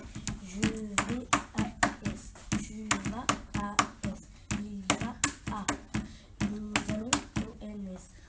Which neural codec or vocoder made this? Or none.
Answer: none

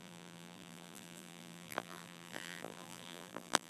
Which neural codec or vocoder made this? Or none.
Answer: vocoder, BigVGAN v2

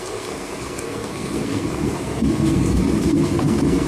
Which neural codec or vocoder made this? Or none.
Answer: codec, SNAC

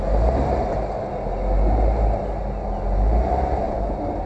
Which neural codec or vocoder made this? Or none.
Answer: none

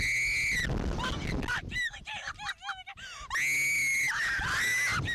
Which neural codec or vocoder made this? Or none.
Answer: none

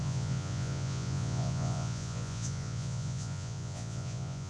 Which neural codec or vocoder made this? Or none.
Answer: vocoder, Vocos